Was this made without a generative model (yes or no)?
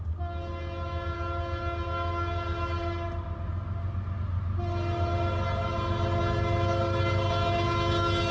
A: yes